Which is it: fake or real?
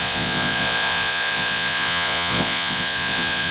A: fake